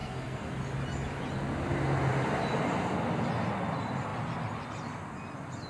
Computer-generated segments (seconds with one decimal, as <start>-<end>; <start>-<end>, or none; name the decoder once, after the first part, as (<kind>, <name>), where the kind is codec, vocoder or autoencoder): 0.0-0.5 (codec, SNAC)